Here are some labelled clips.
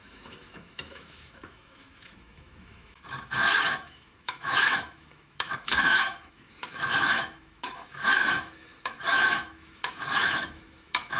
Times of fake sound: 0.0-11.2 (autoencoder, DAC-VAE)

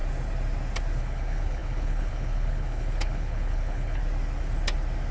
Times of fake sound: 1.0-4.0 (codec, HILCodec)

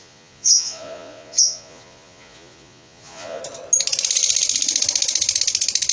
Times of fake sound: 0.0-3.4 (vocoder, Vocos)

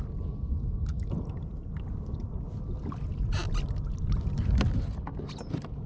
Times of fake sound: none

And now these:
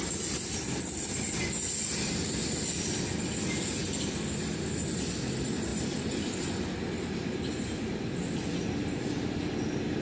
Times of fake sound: none

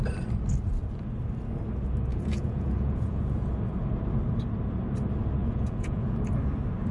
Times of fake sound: 2.1-3.2 (vocoder, Vocos); 5.4-6.2